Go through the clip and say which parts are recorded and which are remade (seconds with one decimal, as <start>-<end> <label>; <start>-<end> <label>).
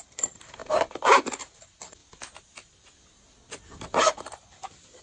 0.0-0.6 remade; 0.6-1.4 recorded; 1.4-2.0 remade; 2.0-4.0 recorded; 4.0-5.0 remade